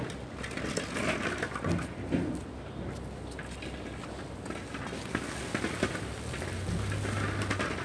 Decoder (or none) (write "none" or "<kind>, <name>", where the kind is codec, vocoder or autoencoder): none